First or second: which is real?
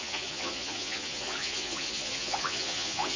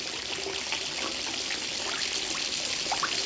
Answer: second